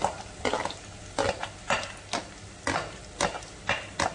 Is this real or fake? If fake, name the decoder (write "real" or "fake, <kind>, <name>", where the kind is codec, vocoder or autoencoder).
real